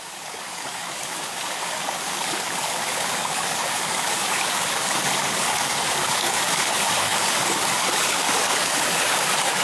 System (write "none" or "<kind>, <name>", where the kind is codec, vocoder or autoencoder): codec, DAC